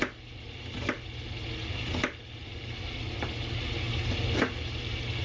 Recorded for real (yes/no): yes